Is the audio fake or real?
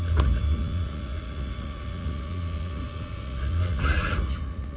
fake